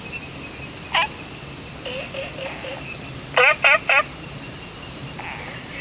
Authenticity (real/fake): real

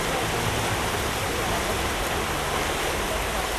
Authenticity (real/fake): real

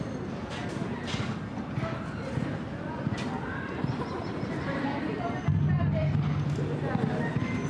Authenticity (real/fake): real